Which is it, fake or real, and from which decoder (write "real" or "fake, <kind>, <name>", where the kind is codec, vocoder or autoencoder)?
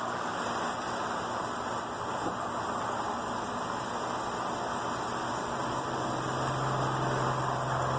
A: real